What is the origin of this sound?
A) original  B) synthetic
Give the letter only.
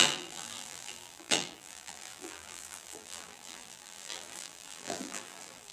B